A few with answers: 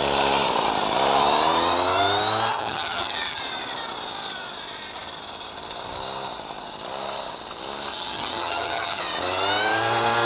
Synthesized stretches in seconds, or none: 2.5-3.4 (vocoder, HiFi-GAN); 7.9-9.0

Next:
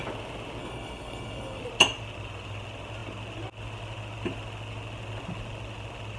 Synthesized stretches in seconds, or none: 0.6-1.6 (codec, HILCodec)

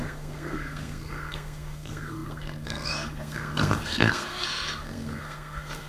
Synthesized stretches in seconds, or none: 0.0-5.9 (codec, SNAC)

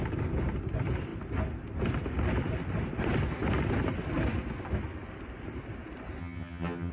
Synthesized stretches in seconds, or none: 6.2-6.9 (vocoder, HiFi-GAN)

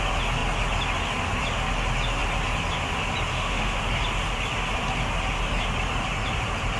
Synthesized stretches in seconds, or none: 3.3-3.8 (autoencoder, DAC-VAE)

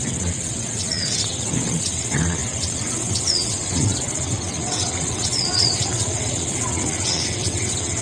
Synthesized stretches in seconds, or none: 0.0-8.0 (vocoder, WaveNeXt)

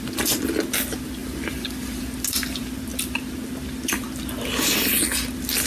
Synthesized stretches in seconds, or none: 1.2-2.0 (vocoder, BigVGAN v2)